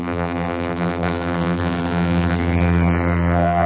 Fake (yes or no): yes